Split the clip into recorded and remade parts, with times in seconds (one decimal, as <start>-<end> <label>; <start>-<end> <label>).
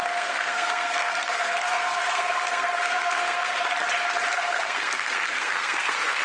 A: 0.0-3.6 remade; 3.6-4.3 recorded; 4.3-6.2 remade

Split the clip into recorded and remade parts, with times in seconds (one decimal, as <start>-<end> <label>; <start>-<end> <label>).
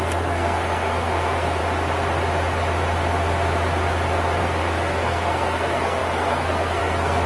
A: 0.0-1.6 remade; 1.6-4.4 recorded; 4.4-7.3 remade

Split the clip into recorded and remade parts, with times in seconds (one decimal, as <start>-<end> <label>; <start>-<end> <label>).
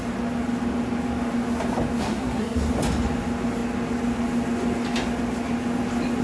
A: 0.0-2.0 recorded; 2.0-2.7 remade; 2.7-6.2 recorded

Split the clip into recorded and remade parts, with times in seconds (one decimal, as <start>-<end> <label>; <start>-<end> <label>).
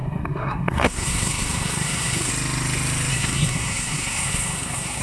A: 0.0-2.3 remade; 2.3-3.1 recorded; 3.1-5.0 remade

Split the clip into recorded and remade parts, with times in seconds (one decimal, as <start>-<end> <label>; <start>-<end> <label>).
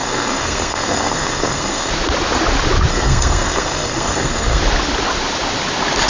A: 0.0-1.9 remade; 1.9-2.9 recorded; 2.9-4.6 remade; 4.6-6.1 recorded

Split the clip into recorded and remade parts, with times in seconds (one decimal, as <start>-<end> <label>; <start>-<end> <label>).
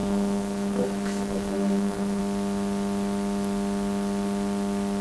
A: 0.0-2.2 remade; 2.2-5.0 recorded